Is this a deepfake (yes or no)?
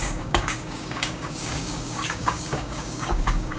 yes